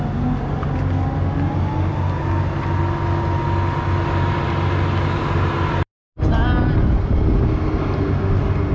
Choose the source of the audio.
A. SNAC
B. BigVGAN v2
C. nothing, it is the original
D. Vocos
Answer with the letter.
C